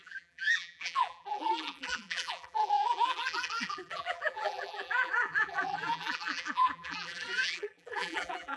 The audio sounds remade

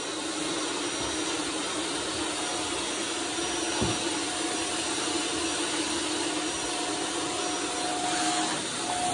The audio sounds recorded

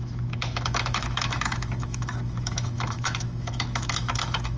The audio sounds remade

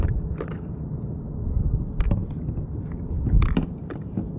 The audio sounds recorded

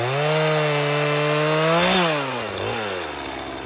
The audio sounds recorded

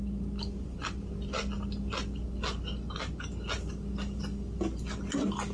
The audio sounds recorded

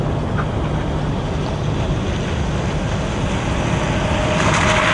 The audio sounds recorded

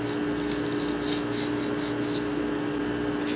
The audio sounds recorded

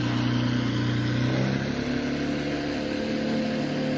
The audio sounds recorded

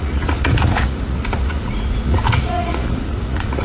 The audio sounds remade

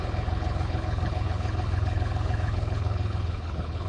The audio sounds remade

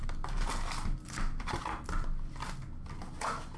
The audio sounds recorded